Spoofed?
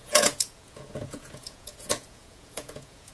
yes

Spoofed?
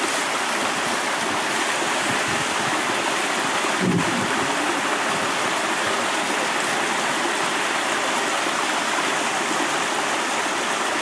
no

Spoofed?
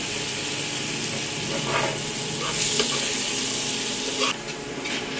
no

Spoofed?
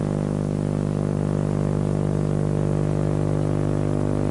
no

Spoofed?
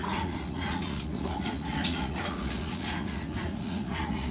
yes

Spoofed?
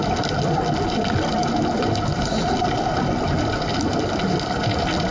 no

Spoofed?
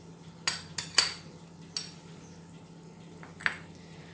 no